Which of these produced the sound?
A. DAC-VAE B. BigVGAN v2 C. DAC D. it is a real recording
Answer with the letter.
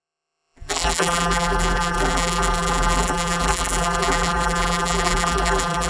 B